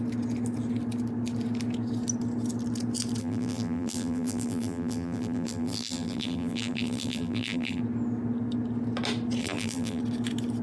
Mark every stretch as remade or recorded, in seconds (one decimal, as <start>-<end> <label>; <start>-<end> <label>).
0.0-3.2 recorded; 3.2-7.8 remade; 7.8-9.4 recorded; 9.4-10.0 remade; 10.0-10.6 recorded